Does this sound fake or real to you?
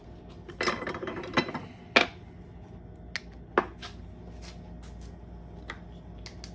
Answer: real